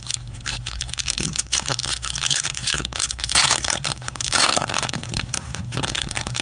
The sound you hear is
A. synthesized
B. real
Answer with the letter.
A